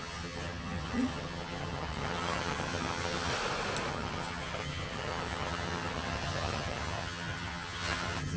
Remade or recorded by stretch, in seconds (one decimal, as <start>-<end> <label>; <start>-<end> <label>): 0.0-3.3 remade; 3.3-3.9 recorded; 3.9-8.4 remade